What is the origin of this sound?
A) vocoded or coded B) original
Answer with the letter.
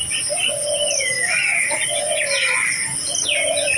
B